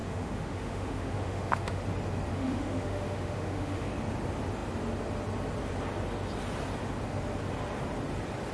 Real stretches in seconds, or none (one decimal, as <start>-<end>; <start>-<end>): 1.8-2.3; 3.9-8.5